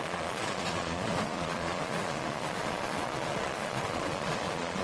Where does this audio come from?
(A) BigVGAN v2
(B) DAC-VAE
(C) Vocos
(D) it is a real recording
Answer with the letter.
C